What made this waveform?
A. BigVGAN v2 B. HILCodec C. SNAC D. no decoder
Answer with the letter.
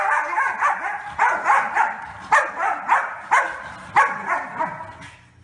D